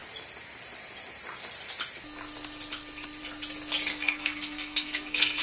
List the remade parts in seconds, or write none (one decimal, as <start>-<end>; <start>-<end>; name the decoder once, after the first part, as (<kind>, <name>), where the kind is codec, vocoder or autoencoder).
3.9-5.4 (codec, SNAC)